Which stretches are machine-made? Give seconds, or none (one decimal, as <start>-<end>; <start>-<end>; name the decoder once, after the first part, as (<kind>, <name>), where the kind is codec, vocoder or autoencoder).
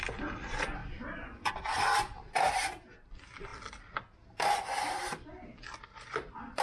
none